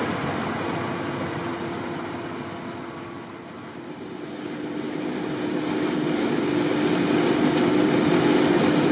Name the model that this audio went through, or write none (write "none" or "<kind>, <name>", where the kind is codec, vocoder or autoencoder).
none